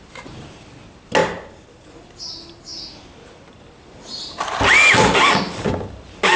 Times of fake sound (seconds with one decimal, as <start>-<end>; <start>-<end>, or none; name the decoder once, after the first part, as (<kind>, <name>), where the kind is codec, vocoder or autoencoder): none